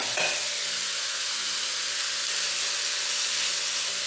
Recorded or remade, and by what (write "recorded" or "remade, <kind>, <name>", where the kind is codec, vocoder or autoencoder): recorded